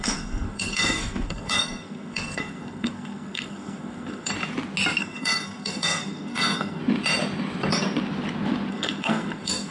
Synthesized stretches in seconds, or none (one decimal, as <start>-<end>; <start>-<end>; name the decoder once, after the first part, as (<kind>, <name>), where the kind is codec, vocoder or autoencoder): 0.0-4.3 (codec, SNAC); 5.0-6.8; 8.7-9.7